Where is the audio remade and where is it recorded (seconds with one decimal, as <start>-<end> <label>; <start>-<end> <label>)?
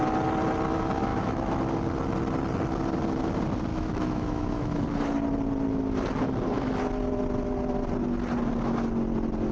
0.0-1.1 recorded; 1.1-1.6 remade; 1.6-3.7 recorded; 3.7-4.8 remade; 4.8-9.5 recorded